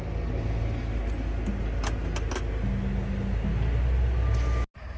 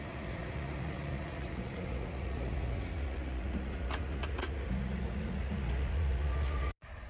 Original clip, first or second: first